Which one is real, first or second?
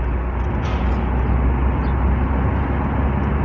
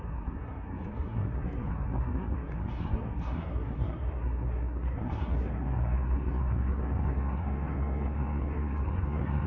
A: first